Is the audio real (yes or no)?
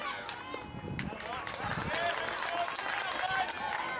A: yes